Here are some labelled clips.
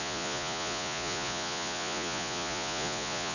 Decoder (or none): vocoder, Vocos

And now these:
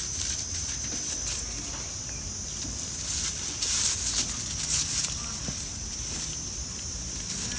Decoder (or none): none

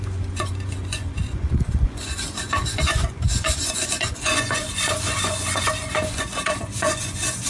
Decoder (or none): vocoder, Vocos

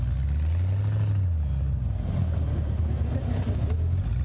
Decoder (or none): none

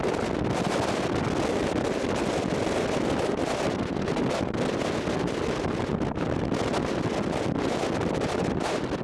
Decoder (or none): none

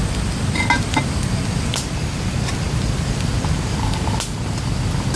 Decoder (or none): none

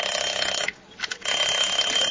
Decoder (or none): none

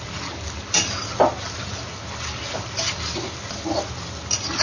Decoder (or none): none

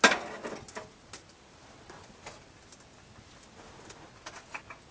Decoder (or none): none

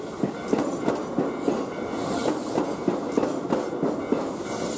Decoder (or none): none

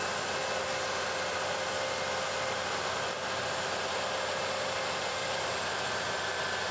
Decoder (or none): none